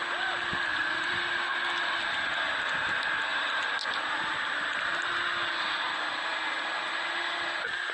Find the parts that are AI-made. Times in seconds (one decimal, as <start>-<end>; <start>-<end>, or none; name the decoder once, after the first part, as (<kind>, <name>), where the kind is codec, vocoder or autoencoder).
0.7-1.2 (vocoder, BigVGAN v2)